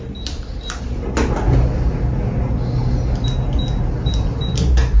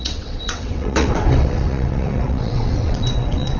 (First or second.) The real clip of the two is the first